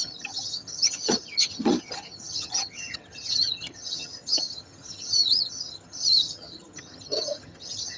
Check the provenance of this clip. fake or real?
fake